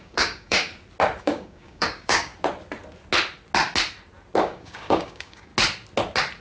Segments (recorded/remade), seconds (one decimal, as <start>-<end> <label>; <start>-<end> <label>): 0.0-0.7 remade; 0.7-1.2 recorded; 1.2-2.3 remade; 2.3-4.4 recorded; 4.4-5.5 remade; 5.5-6.4 recorded